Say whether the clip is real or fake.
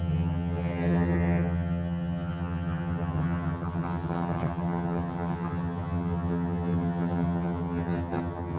fake